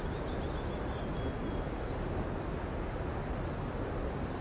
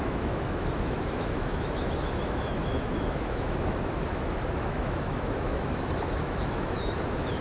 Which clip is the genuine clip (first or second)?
first